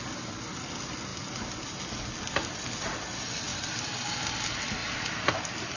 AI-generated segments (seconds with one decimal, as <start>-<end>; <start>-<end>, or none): none